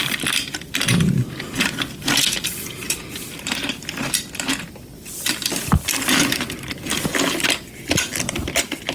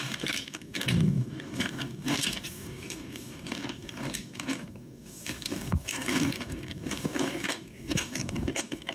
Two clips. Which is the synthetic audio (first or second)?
second